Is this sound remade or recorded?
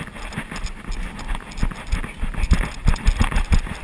recorded